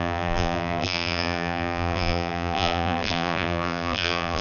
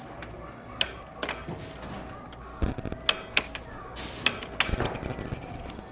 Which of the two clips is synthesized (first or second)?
first